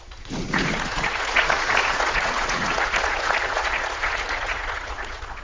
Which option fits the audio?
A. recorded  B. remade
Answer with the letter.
B